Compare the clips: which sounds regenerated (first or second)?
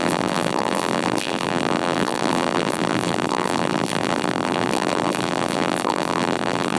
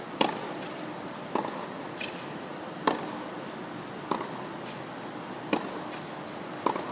first